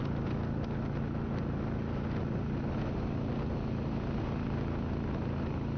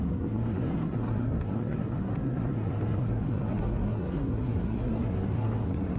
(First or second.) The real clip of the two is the first